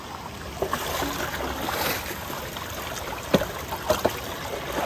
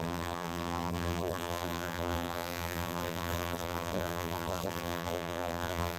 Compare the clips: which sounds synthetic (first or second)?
second